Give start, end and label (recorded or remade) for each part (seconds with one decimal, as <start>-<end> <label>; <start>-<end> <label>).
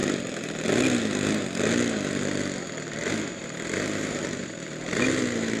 0.0-3.1 recorded; 3.1-5.6 remade